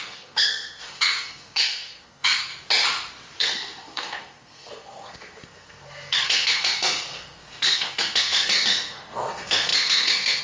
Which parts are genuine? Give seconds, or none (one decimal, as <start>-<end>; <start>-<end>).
2.5-3.4